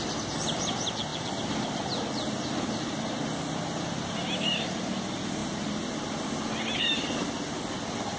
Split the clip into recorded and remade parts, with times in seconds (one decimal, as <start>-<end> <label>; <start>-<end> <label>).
0.0-8.2 recorded